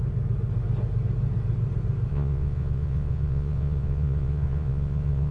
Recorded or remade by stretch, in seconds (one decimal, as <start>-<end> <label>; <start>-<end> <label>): 0.0-2.1 recorded; 2.1-5.3 remade

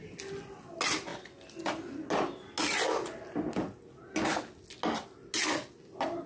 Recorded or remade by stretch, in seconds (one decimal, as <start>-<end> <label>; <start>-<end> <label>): 0.0-6.3 recorded

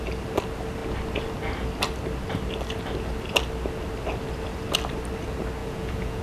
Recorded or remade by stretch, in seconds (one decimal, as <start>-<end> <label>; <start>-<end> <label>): 0.0-5.6 recorded; 5.6-6.2 remade

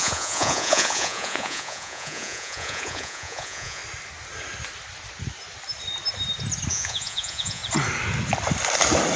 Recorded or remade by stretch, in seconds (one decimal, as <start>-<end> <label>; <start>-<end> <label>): 0.0-3.8 remade; 3.8-6.7 recorded; 6.7-7.6 remade; 7.6-9.2 recorded

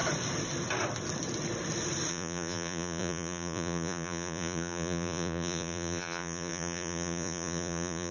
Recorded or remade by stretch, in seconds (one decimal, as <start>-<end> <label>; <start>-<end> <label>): 0.0-2.1 recorded; 2.1-8.1 remade

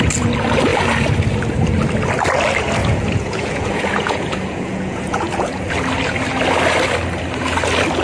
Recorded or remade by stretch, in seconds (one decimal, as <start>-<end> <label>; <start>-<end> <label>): 0.0-2.8 recorded; 2.8-5.7 remade; 5.7-8.0 recorded

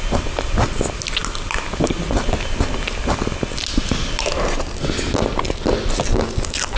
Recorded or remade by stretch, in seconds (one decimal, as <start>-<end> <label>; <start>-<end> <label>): 0.0-6.8 recorded

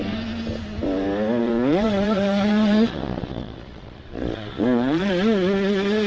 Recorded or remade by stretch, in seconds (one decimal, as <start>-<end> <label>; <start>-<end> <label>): 0.0-1.4 recorded; 1.4-5.1 remade; 5.1-6.1 recorded